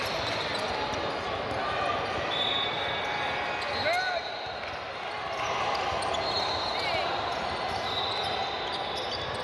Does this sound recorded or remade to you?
recorded